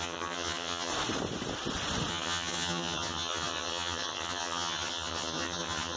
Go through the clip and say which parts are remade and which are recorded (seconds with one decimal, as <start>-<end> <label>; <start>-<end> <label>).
0.0-0.9 remade; 0.9-2.1 recorded; 2.1-6.0 remade